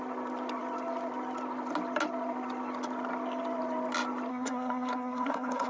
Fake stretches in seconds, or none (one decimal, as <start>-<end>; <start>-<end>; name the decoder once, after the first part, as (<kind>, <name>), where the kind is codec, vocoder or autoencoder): 4.3-5.7 (codec, SNAC)